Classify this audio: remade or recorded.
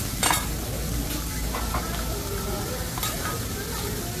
recorded